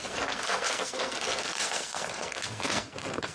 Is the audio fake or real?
fake